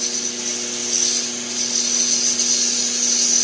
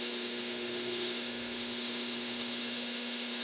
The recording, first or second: first